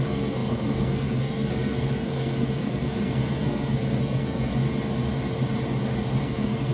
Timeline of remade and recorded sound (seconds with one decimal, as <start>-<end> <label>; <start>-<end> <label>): 0.0-4.5 remade; 4.5-6.2 recorded; 6.2-6.7 remade